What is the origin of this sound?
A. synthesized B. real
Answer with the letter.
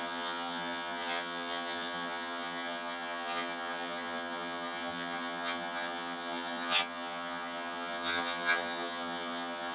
A